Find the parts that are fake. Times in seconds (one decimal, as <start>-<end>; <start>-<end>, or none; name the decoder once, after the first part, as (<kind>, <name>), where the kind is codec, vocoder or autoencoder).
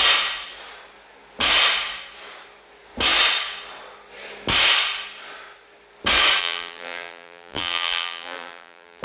6.4-9.0 (vocoder, BigVGAN v2)